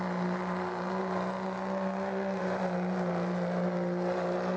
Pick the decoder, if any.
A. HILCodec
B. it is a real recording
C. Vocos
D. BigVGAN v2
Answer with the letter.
B